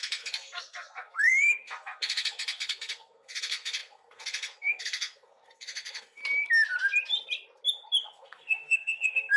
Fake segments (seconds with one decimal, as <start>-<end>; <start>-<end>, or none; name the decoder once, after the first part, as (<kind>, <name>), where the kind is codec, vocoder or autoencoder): 0.0-6.2 (codec, SNAC); 8.0-9.4